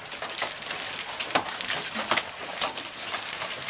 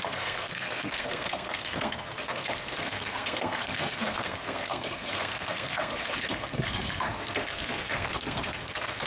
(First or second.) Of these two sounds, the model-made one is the second